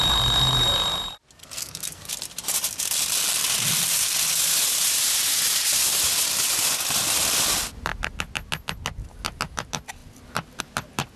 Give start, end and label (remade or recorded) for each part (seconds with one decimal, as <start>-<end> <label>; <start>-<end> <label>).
0.0-1.4 recorded; 1.4-2.1 remade; 2.1-11.2 recorded